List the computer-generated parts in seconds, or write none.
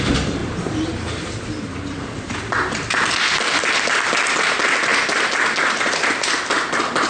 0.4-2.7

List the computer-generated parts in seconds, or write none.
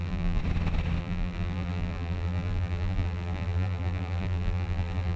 0.0-0.4; 1.0-5.2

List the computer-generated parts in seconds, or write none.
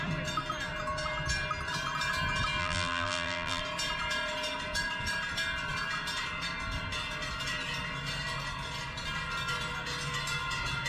2.6-3.6